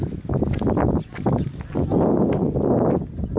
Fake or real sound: real